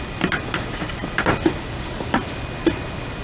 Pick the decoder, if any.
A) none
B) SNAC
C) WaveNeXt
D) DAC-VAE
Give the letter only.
A